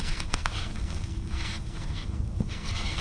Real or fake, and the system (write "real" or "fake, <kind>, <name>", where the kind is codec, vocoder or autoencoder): fake, codec, SNAC